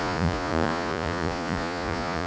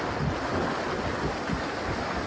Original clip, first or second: second